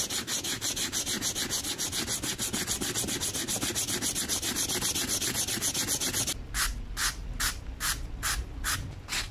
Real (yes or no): yes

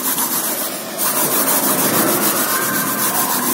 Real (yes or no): yes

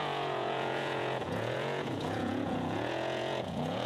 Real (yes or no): no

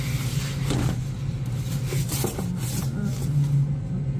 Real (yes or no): yes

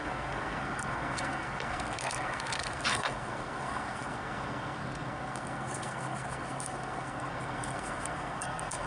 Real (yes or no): no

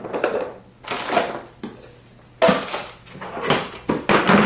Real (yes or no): yes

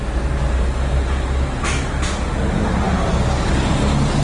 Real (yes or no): yes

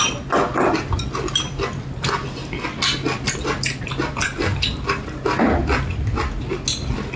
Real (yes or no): yes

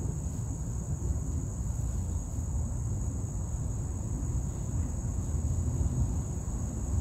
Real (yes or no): yes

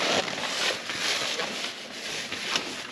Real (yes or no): yes